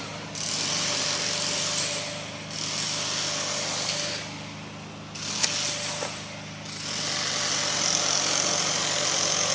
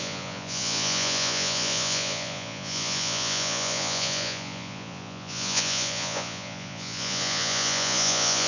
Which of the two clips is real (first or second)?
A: first